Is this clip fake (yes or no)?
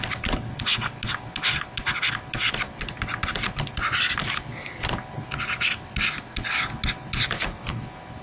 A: no